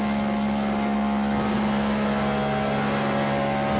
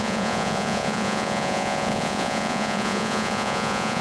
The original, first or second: first